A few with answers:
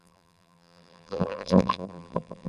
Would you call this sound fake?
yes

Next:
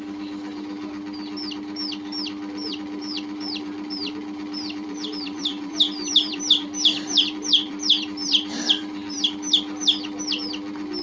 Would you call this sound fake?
yes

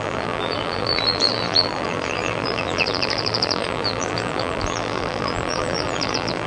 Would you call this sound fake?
yes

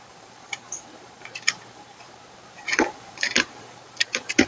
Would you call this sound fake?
yes